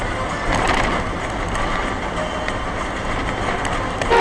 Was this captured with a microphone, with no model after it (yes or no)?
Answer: yes